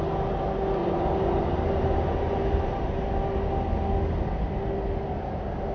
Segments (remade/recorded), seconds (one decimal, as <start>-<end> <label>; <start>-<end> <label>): 0.0-0.8 recorded; 0.8-2.8 remade; 2.8-5.7 recorded